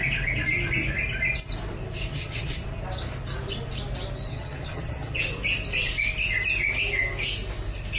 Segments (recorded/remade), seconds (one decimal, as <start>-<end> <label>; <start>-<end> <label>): 0.0-2.1 recorded; 2.1-2.6 remade; 2.6-4.3 recorded; 4.3-5.2 remade; 5.2-8.0 recorded